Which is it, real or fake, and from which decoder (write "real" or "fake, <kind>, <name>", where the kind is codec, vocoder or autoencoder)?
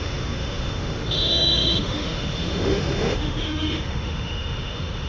fake, autoencoder, DAC-VAE